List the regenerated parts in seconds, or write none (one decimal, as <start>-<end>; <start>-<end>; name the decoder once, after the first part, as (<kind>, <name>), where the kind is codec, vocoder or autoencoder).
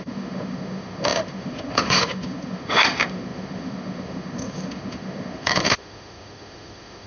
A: 0.0-7.1 (autoencoder, DAC-VAE)